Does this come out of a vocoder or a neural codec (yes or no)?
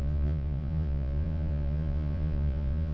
yes